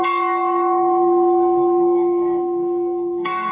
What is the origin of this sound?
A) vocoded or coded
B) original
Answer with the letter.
A